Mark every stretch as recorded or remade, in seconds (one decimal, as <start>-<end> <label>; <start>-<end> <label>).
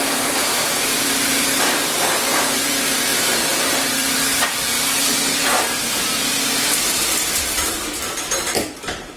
0.0-3.1 remade; 3.1-3.9 recorded; 3.9-9.2 remade